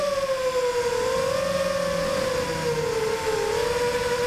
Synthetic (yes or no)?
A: no